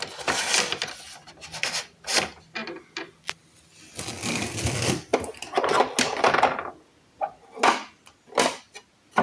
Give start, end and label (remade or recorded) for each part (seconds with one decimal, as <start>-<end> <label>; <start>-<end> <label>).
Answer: 0.0-9.2 recorded